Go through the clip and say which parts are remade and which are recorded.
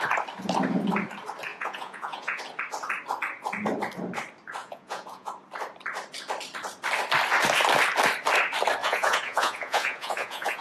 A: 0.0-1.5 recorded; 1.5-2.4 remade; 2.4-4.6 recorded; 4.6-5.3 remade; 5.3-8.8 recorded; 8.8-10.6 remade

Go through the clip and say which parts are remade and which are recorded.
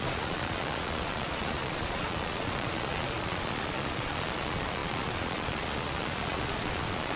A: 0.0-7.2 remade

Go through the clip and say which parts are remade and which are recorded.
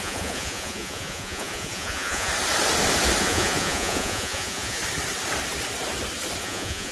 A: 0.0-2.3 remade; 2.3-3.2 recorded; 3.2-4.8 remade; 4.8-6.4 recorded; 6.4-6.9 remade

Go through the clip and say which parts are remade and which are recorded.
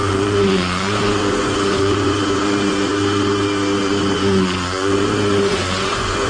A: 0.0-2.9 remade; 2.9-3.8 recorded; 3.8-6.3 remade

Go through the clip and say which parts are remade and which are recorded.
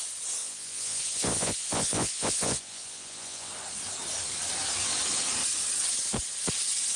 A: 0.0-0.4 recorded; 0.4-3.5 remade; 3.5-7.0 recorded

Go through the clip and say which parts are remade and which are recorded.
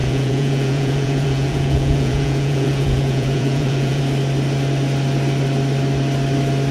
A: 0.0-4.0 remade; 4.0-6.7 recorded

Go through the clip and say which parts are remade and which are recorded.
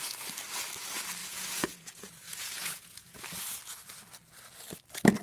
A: 0.0-1.2 recorded; 1.2-3.2 remade; 3.2-5.2 recorded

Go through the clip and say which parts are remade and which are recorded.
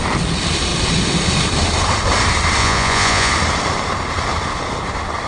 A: 0.0-2.6 recorded; 2.6-3.3 remade; 3.3-5.3 recorded